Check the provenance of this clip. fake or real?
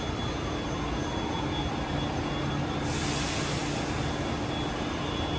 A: real